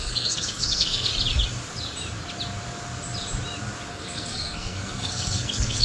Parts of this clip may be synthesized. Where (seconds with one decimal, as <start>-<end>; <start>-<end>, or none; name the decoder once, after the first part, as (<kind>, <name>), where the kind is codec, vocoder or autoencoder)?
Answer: 0.0-1.1 (codec, SNAC); 3.9-5.8